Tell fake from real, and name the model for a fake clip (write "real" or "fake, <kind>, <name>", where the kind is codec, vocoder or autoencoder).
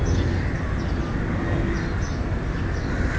real